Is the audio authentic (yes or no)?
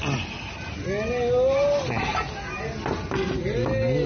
yes